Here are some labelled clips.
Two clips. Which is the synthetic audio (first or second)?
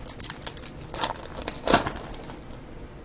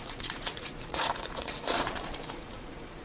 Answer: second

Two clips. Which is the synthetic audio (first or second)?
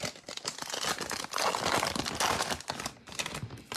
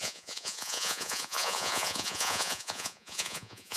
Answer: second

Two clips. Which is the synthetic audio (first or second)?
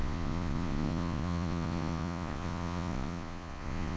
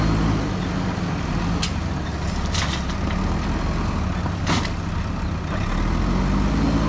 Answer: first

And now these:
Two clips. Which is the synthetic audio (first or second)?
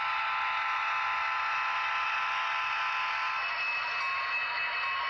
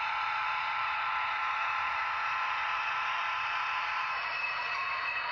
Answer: second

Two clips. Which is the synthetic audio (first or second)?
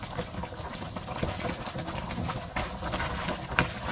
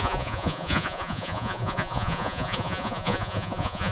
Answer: second